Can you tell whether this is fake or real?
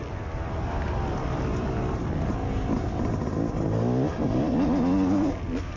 real